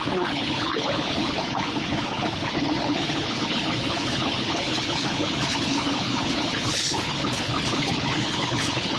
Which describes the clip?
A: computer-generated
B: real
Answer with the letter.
A